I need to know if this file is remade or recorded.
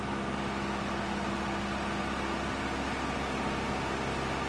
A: recorded